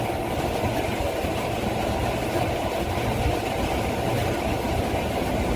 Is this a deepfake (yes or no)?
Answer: no